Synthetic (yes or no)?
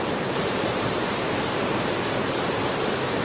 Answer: yes